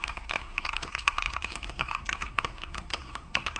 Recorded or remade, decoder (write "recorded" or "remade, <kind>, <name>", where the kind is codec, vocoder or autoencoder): remade, codec, SNAC